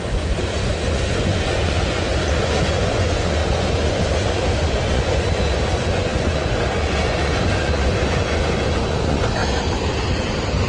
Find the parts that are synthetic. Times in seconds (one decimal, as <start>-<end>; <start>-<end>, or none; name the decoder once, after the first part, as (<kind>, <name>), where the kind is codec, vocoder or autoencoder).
0.0-9.4 (vocoder, Vocos)